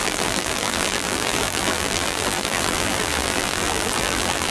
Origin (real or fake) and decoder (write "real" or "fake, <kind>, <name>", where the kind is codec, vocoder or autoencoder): fake, vocoder, BigVGAN v2